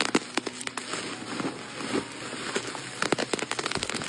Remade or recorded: recorded